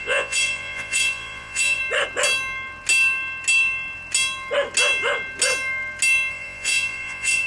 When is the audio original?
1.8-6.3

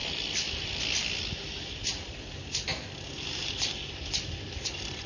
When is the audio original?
0.0-5.1

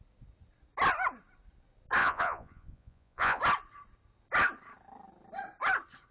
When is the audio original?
0.0-2.0; 3.4-6.1

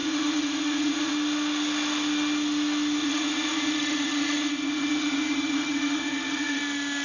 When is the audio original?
1.1-3.0; 6.6-7.0

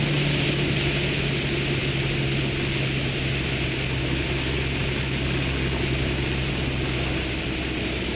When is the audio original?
0.0-8.2